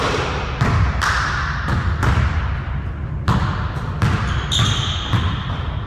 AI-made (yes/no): no